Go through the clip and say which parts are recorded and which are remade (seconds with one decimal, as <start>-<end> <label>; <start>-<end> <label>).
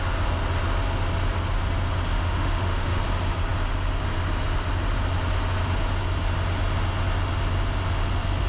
0.0-2.1 recorded; 2.1-3.0 remade; 3.0-8.5 recorded